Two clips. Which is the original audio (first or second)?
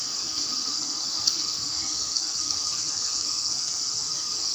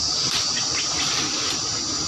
second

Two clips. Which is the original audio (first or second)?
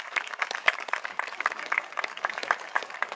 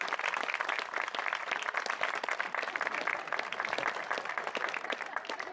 second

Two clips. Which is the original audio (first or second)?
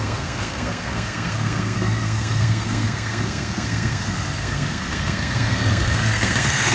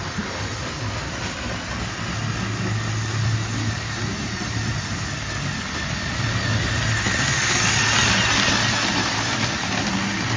second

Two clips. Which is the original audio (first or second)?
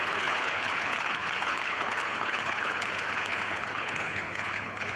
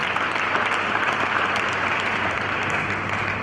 second